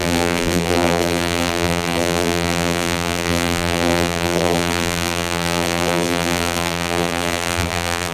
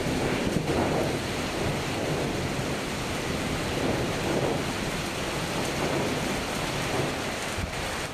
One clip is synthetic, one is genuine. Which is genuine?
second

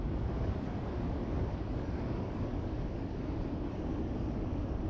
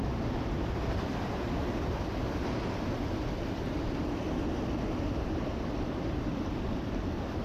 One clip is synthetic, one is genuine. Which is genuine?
second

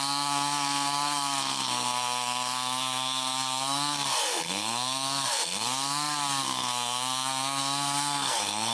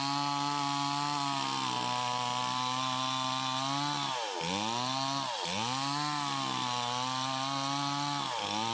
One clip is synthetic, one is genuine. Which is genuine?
second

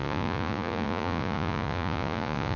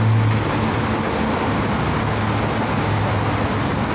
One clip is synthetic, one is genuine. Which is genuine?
second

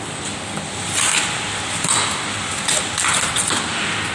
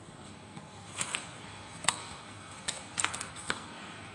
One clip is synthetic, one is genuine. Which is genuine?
first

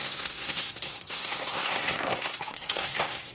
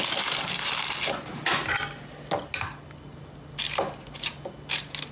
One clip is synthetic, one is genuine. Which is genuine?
second